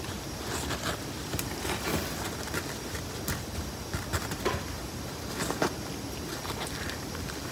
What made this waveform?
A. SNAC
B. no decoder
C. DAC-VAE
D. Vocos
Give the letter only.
B